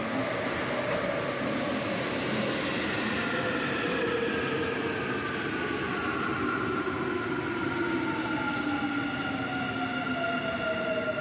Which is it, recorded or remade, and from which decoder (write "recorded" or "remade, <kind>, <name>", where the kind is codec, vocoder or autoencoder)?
recorded